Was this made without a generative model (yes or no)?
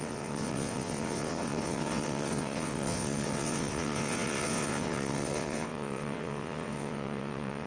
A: no